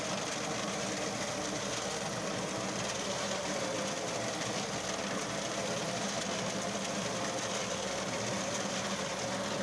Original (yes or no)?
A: yes